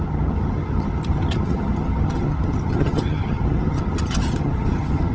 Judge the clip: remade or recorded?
remade